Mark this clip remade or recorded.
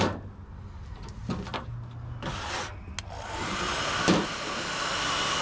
recorded